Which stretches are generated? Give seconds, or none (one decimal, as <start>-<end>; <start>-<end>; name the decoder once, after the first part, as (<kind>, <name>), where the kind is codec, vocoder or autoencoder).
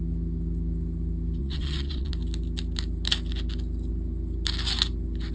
1.4-2.1 (vocoder, WaveNeXt)